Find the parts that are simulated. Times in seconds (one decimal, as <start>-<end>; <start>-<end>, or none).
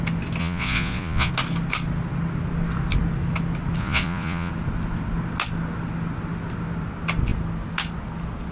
0.4-1.3; 3.8-4.5